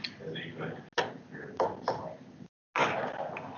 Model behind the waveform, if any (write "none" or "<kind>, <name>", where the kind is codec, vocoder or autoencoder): none